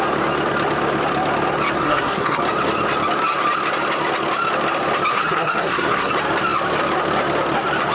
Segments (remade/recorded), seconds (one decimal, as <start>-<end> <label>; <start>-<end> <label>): 0.0-1.8 recorded; 1.8-2.4 remade; 2.4-5.1 recorded; 5.1-6.1 remade; 6.1-7.9 recorded